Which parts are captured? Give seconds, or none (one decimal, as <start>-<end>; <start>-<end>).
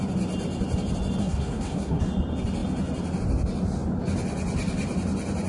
0.0-1.2; 2.0-5.5